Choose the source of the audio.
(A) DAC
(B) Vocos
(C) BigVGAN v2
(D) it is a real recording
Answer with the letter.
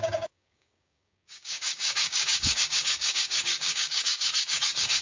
A